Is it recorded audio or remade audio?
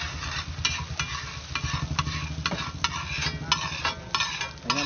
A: recorded